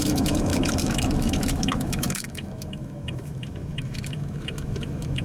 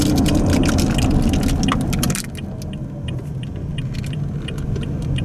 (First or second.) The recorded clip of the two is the second